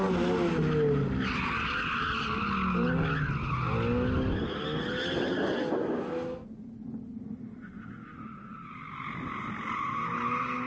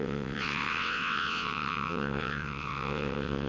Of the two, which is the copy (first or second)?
second